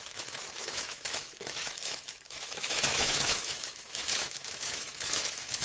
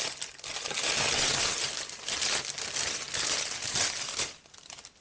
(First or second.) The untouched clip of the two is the second